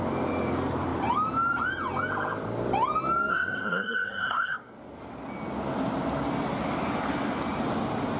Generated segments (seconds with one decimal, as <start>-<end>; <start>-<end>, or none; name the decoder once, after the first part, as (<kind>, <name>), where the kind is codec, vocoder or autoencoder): 3.3-4.7 (codec, SNAC)